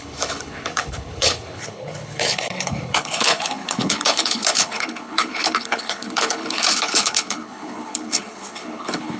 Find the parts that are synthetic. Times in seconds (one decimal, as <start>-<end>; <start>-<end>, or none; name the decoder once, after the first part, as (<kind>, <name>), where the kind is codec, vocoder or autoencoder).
0.0-9.2 (codec, HILCodec)